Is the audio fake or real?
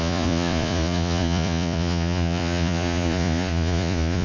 fake